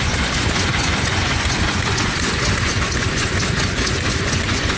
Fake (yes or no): yes